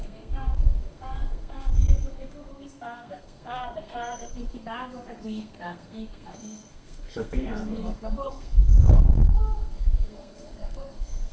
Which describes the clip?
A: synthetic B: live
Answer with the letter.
A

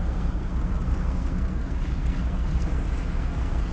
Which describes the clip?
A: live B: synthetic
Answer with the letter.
B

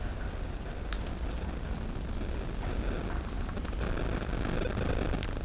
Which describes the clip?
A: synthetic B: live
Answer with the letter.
B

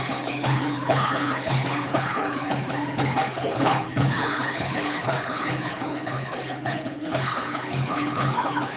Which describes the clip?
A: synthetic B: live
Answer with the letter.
A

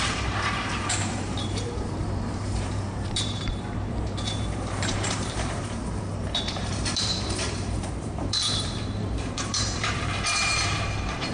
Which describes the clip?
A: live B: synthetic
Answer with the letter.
B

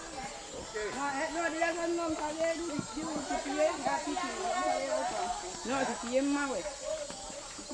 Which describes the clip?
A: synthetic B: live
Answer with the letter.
B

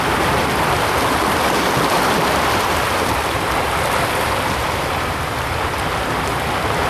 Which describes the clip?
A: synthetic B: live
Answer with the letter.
B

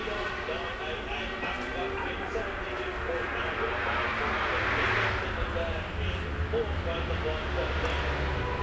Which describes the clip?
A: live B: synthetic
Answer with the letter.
A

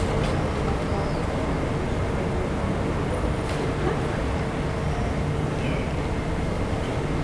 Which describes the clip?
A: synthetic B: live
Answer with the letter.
B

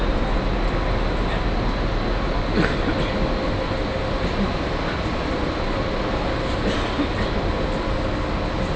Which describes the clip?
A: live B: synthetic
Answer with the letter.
A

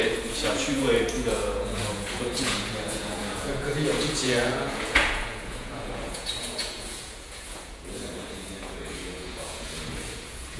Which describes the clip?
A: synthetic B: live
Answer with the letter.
A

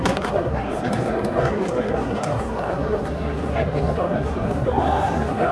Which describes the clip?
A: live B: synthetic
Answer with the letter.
B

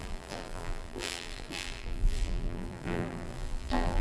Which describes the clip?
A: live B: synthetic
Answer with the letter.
B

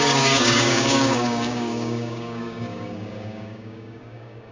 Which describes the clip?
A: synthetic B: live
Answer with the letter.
A